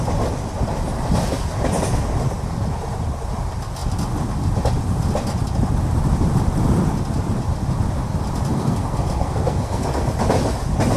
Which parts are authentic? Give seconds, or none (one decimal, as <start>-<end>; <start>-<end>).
0.0-8.5; 10.1-11.0